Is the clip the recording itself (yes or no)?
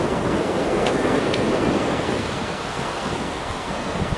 no